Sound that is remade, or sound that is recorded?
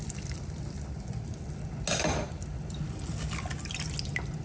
recorded